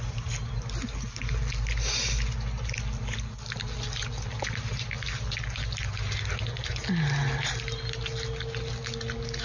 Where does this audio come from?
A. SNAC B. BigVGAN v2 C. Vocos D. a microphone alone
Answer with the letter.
D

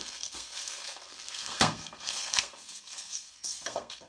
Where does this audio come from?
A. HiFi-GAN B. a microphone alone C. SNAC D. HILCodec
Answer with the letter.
C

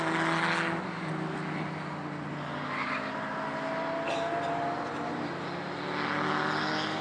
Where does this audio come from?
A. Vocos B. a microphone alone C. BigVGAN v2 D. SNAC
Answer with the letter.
B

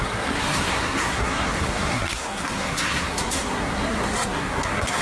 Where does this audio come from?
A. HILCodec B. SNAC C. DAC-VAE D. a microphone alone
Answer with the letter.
B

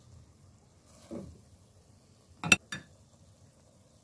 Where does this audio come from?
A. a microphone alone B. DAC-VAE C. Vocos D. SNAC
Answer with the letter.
A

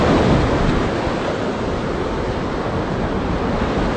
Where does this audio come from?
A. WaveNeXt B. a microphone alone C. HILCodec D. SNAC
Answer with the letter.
B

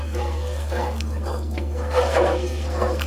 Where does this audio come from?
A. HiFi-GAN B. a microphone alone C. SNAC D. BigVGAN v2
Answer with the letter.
C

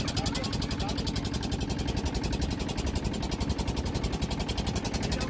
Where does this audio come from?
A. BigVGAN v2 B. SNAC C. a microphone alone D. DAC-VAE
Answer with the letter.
C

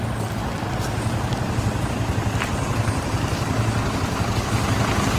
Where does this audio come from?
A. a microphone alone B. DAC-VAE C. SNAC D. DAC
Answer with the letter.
A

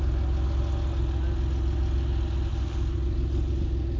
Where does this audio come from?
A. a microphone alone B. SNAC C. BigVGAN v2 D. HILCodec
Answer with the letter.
A